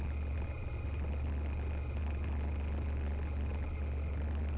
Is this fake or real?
real